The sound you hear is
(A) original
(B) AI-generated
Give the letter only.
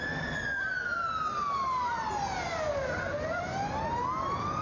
A